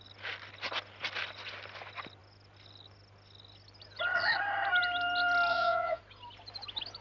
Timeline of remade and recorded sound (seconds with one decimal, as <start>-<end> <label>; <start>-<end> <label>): 0.0-5.5 recorded; 5.5-6.0 remade; 6.0-7.0 recorded